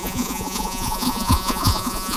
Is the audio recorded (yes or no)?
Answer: no